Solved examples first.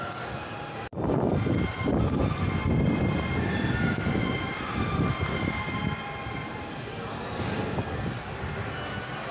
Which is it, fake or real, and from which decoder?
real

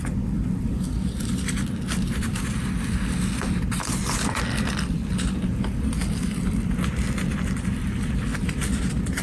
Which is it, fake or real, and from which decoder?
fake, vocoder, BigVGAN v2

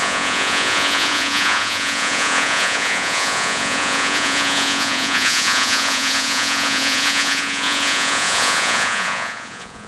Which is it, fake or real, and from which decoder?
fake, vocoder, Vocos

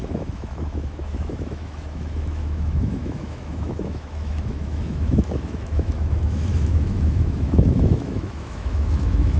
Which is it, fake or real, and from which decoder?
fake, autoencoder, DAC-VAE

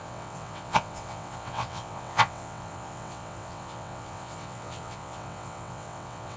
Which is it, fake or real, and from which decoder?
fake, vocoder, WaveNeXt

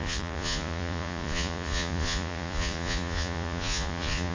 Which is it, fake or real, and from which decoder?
fake, vocoder, Vocos